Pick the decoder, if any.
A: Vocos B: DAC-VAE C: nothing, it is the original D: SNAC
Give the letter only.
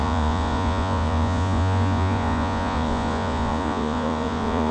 A